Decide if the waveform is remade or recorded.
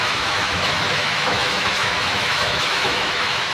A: remade